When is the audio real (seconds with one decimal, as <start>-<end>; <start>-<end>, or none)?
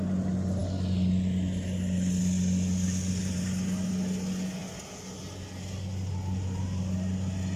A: 0.0-3.2; 3.9-7.6